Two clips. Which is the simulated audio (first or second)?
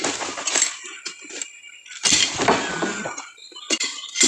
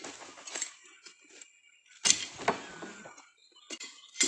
first